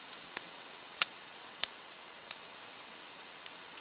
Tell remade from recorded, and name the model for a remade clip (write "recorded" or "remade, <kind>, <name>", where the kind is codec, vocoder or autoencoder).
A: remade, vocoder, WaveNeXt